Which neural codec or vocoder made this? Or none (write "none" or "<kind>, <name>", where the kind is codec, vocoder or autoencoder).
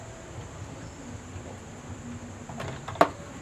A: none